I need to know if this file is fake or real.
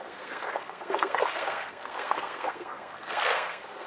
fake